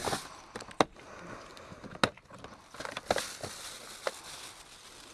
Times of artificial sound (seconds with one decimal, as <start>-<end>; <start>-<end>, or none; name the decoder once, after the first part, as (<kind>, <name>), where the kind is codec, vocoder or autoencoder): none